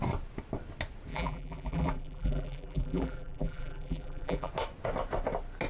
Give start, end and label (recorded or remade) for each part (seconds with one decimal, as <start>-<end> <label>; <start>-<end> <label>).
0.0-1.1 recorded; 1.1-4.5 remade; 4.5-5.7 recorded